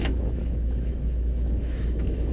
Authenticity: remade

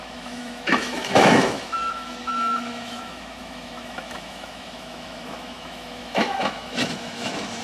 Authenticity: remade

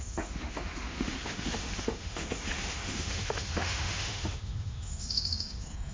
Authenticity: remade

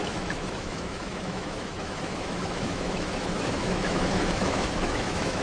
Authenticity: remade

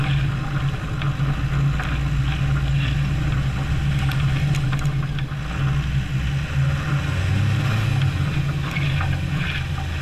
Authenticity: recorded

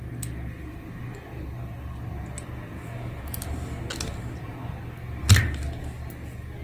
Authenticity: recorded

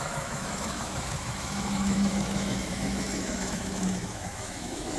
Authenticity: remade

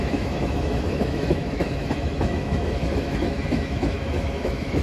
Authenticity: remade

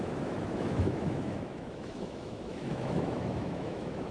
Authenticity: remade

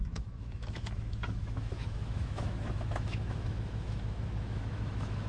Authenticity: remade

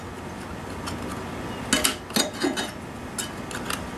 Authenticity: recorded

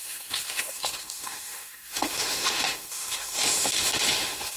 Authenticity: remade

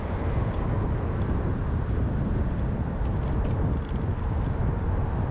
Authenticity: recorded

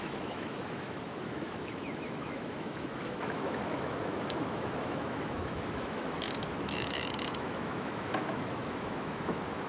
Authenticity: remade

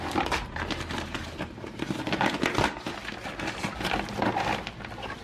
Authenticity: recorded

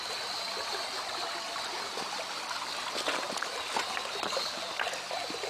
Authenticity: recorded